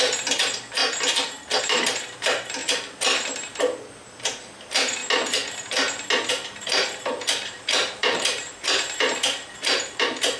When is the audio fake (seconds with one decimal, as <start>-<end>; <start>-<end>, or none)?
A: 0.0-0.8; 1.6-5.0; 6.3-10.4